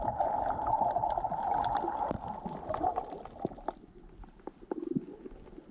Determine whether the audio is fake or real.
fake